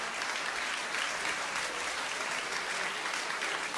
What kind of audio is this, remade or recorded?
recorded